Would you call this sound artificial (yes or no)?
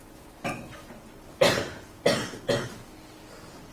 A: no